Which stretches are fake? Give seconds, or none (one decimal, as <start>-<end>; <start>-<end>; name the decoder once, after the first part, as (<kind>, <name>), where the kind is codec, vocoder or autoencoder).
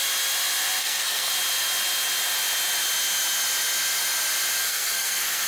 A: 0.8-1.3 (codec, SNAC); 4.6-5.5